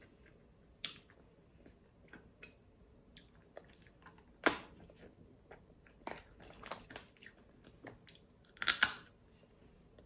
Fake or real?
real